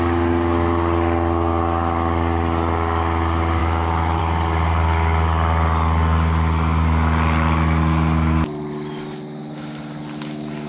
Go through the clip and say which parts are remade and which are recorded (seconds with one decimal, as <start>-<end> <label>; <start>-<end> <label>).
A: 0.0-3.6 recorded; 3.6-4.2 remade; 4.2-10.7 recorded